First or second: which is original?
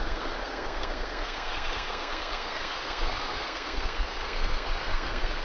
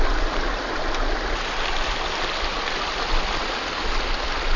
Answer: second